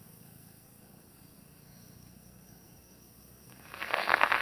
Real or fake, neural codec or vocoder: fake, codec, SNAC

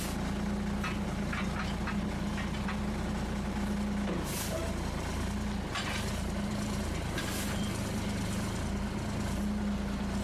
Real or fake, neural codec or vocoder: real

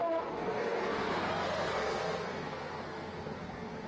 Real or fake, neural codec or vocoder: fake, codec, SNAC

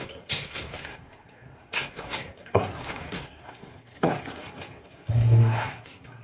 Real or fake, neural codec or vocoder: fake, codec, SNAC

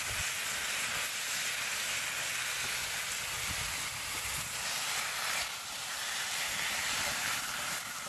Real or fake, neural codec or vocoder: real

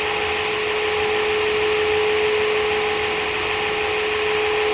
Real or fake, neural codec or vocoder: real